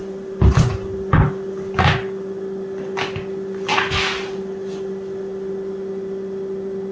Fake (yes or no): no